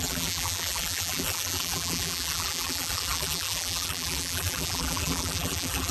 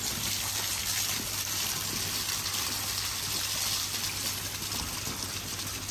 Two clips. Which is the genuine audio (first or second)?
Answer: second